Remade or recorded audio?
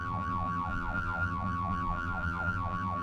remade